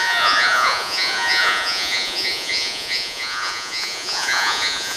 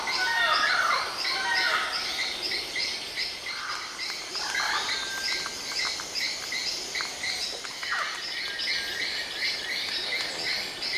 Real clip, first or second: second